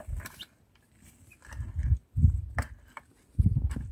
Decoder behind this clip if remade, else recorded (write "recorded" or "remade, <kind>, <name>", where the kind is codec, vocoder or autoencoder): recorded